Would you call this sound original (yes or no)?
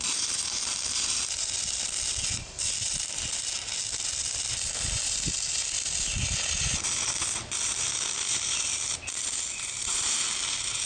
yes